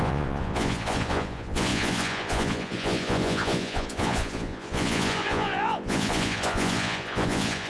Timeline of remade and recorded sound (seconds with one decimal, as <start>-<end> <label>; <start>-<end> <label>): 0.0-7.7 remade

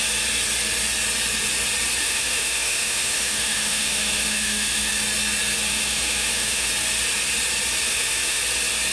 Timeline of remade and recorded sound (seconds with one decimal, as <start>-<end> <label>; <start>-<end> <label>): 0.0-2.0 recorded; 2.0-4.9 remade; 4.9-5.7 recorded; 5.7-6.7 remade; 6.7-7.9 recorded; 7.9-8.4 remade; 8.4-8.9 recorded